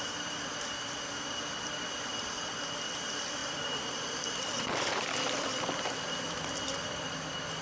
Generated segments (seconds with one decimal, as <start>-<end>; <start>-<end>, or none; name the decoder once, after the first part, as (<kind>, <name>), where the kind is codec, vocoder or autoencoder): 3.4-7.6 (vocoder, BigVGAN v2)